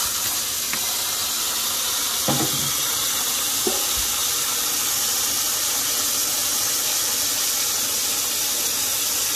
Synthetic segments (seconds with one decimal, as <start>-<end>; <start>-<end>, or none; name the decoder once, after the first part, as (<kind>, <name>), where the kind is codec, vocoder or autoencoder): none